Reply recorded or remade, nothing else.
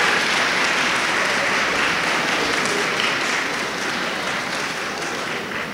recorded